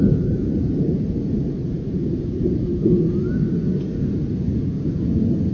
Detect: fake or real fake